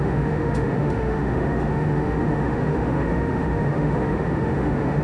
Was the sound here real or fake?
fake